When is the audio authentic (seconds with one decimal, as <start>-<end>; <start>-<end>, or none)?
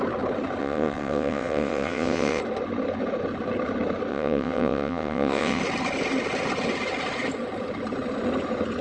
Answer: 0.0-0.6; 2.4-4.1; 5.6-8.8